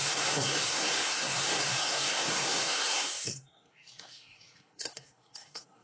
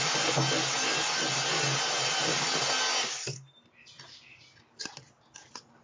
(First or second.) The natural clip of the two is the second